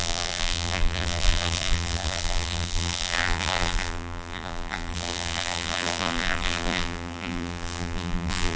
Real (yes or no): no